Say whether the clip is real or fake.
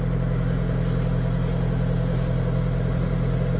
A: real